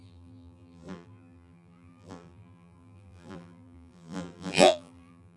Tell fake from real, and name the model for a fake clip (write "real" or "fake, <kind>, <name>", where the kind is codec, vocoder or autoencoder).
fake, vocoder, BigVGAN v2